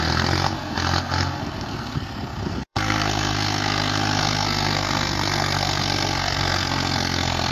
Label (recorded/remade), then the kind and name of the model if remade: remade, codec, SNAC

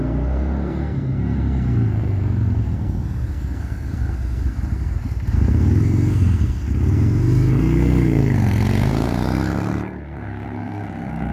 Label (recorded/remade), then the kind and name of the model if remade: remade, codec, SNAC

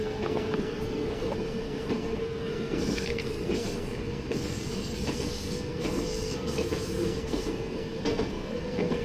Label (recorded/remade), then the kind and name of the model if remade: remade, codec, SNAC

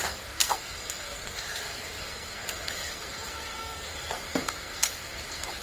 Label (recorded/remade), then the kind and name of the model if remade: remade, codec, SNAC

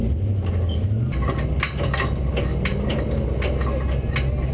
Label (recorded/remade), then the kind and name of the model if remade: recorded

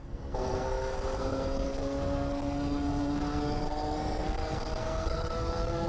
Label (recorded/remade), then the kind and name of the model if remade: remade, codec, SNAC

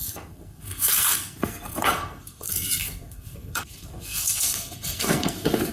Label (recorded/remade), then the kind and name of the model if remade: remade, codec, SNAC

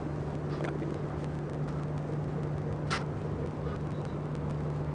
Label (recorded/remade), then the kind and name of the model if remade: recorded